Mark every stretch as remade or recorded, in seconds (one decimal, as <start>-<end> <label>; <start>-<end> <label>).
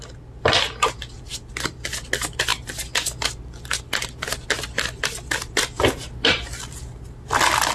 0.0-7.7 recorded